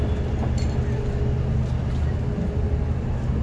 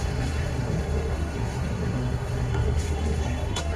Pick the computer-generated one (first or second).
second